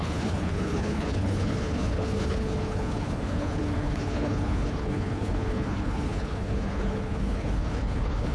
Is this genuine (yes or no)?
no